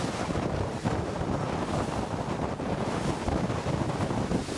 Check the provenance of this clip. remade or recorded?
recorded